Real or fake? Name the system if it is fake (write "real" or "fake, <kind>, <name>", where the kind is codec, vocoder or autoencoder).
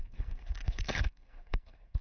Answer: fake, codec, SNAC